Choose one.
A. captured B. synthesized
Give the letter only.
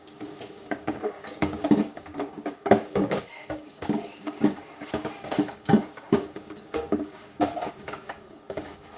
B